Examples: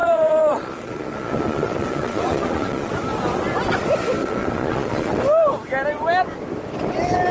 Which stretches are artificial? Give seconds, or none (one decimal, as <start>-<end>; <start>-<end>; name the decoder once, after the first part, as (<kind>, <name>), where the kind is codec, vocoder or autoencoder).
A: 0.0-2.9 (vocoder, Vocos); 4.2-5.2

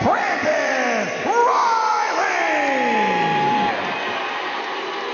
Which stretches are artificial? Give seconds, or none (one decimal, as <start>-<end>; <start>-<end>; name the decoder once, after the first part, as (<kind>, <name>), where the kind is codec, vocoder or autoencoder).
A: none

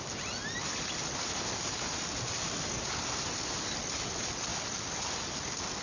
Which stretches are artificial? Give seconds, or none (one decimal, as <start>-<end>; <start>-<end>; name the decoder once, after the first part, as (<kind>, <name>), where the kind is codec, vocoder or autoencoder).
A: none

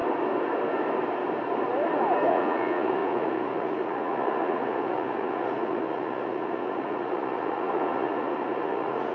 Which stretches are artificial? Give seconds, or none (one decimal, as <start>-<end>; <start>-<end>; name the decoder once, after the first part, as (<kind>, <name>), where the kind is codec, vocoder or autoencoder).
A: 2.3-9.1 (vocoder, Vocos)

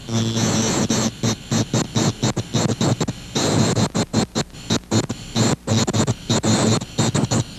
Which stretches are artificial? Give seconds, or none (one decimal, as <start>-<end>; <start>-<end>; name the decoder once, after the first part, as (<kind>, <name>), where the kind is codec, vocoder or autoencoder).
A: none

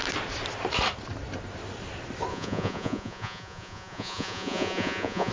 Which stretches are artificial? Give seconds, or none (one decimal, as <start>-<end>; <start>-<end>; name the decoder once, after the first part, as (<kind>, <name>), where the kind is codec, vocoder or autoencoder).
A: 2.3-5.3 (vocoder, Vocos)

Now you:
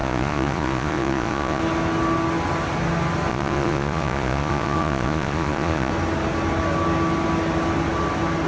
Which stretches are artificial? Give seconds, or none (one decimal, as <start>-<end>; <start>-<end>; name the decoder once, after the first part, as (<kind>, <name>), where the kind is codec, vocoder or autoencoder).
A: 0.0-1.6 (vocoder, Vocos); 3.3-5.9

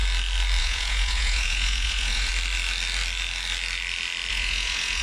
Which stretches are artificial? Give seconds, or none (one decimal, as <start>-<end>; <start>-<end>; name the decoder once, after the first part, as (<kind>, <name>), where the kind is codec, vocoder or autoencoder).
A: 0.6-2.3 (vocoder, Vocos); 4.3-5.0